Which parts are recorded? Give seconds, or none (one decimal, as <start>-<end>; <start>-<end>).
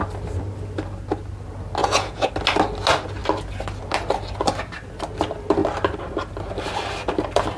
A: 0.0-1.8; 2.3-7.6